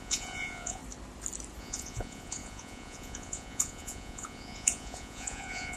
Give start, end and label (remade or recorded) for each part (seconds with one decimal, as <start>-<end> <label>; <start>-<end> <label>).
0.0-0.8 remade; 0.8-1.6 recorded; 1.6-5.8 remade